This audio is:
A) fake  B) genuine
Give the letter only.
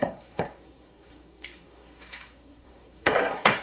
A